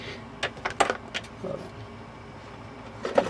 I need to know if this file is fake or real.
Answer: real